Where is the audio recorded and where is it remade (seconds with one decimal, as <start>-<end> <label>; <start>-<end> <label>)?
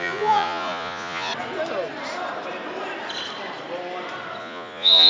0.0-1.3 remade; 1.3-4.4 recorded; 4.4-5.1 remade